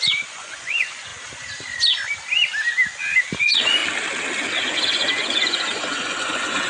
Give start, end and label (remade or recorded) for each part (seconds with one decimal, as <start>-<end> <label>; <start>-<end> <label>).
0.0-1.1 remade; 1.1-3.4 recorded; 3.4-3.8 remade; 3.8-4.6 recorded; 4.6-6.7 remade